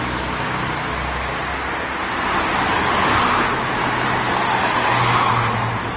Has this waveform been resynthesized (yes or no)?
no